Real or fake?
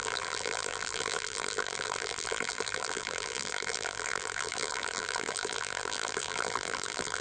fake